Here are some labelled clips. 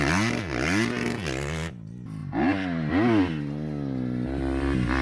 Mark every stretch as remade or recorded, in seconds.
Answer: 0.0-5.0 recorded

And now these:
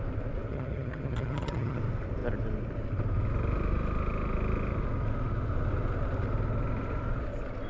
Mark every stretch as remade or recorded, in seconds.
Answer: 0.0-0.5 recorded; 0.5-1.8 remade; 1.8-7.7 recorded

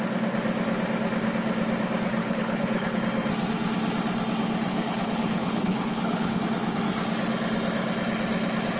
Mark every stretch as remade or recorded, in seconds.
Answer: 0.0-2.2 recorded; 2.2-3.0 remade; 3.0-4.7 recorded; 4.7-6.4 remade; 6.4-8.8 recorded

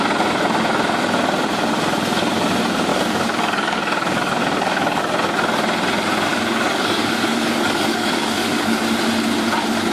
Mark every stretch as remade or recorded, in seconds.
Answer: 0.0-2.9 recorded; 2.9-5.0 remade; 5.0-6.3 recorded; 6.3-8.8 remade; 8.8-9.9 recorded

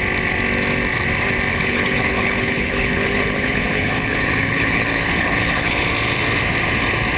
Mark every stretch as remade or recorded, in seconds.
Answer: 0.0-1.5 recorded; 1.5-5.8 remade; 5.8-7.2 recorded